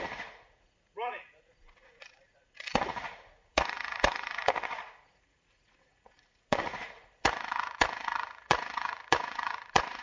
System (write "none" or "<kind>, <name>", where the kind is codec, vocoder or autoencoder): vocoder, Vocos